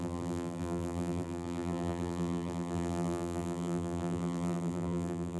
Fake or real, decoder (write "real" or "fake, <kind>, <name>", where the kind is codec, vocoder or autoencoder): fake, vocoder, BigVGAN v2